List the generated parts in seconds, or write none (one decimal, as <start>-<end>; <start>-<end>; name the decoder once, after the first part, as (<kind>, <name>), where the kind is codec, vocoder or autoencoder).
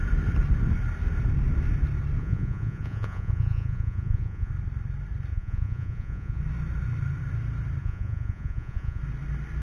2.2-4.5 (vocoder, Vocos); 5.3-6.4; 7.8-9.0